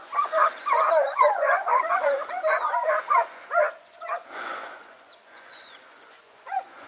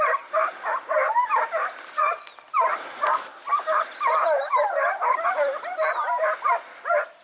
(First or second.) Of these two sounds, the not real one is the first